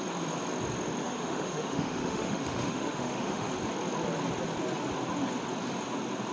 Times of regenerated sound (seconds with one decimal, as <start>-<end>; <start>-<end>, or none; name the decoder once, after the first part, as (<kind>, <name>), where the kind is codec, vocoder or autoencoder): 1.0-3.5 (autoencoder, DAC-VAE)

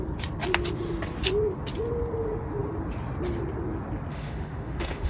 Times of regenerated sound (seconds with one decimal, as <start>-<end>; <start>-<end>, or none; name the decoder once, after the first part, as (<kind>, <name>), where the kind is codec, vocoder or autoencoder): 4.1-5.1 (autoencoder, DAC-VAE)